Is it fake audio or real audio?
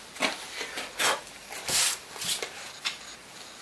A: real